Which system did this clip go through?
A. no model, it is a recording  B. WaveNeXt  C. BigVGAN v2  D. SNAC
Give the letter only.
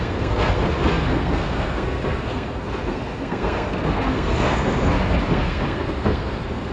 D